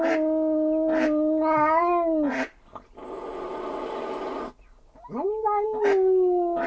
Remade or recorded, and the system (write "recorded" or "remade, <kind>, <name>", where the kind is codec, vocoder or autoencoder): recorded